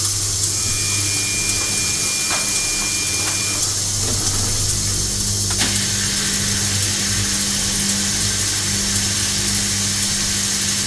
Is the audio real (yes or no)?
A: yes